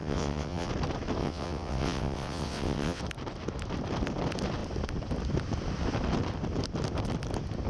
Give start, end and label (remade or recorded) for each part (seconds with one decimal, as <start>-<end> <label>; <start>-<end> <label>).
0.0-0.7 remade; 0.7-1.2 recorded; 1.2-3.0 remade; 3.0-7.7 recorded